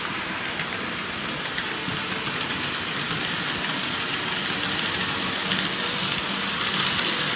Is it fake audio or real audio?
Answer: real